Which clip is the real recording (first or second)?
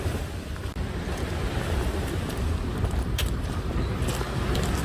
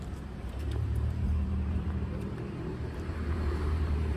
first